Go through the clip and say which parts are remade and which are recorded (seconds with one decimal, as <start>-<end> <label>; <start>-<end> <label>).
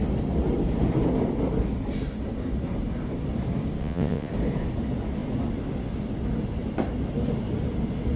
0.0-3.8 recorded; 3.8-4.3 remade; 4.3-8.2 recorded